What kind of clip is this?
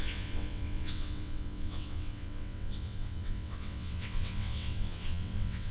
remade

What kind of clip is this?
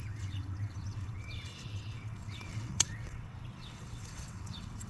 remade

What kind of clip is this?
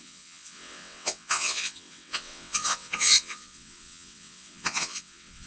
remade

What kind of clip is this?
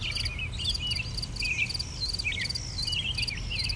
recorded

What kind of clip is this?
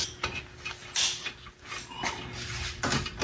recorded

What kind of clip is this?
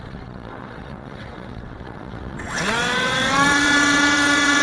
remade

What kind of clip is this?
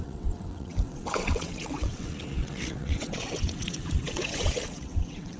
remade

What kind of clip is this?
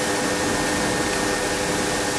recorded